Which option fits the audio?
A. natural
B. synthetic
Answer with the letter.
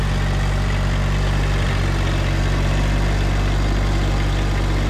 A